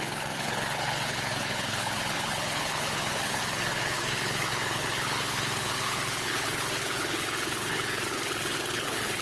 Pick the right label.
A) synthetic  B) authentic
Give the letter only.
A